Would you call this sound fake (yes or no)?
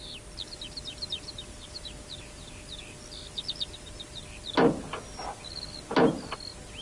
no